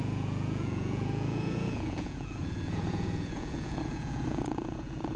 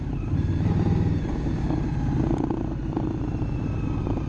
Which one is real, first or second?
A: second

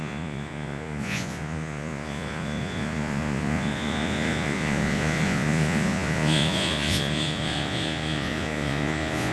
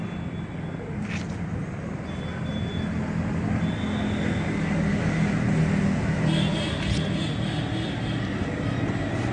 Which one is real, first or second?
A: second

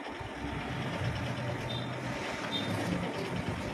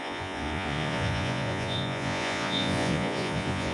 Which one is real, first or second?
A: first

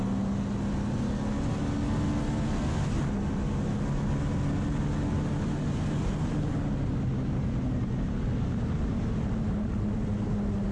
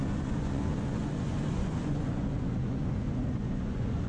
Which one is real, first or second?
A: first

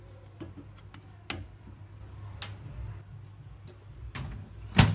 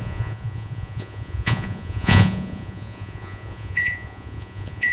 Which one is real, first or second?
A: first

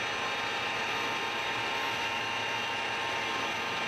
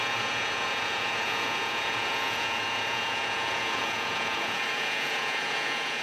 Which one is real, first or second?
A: first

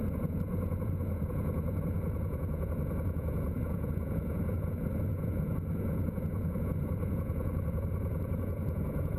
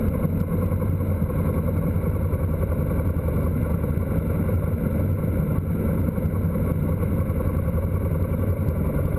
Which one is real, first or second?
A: second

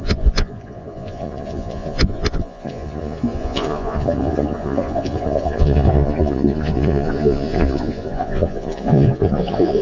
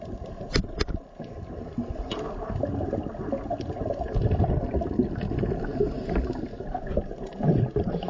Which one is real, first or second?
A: second